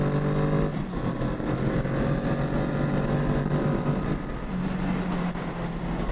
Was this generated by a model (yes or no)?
no